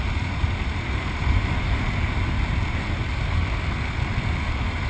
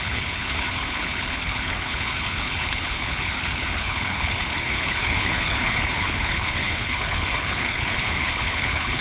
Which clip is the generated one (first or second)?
second